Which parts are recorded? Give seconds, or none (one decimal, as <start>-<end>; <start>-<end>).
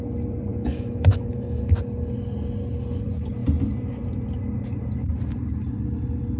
0.0-0.5; 1.6-6.4